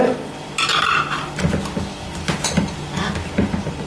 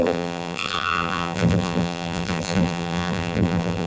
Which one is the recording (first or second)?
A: first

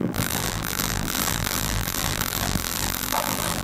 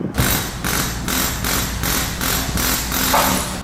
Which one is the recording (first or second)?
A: second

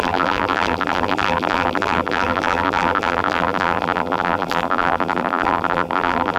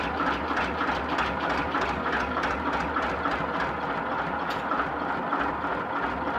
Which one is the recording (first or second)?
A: second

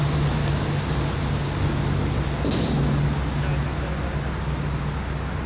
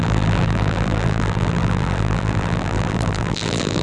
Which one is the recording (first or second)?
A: first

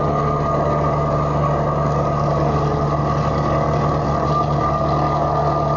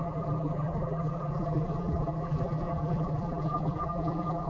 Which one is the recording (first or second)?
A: first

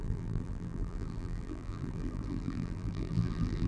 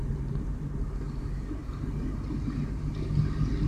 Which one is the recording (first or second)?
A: second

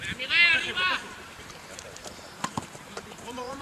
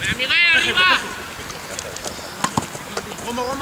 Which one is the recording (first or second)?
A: second